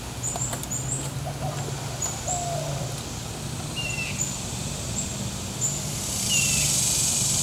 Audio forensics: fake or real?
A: real